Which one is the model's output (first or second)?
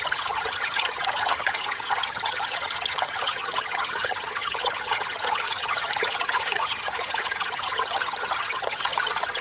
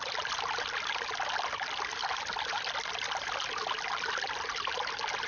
first